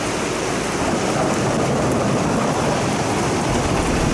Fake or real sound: real